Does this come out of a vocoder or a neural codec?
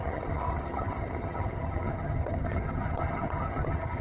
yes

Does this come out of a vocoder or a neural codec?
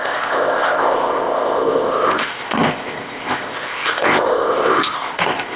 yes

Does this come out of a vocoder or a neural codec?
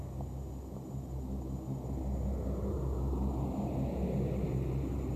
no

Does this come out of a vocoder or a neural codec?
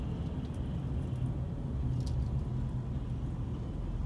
no